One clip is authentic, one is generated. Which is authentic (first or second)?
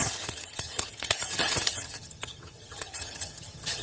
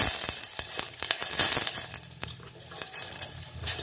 second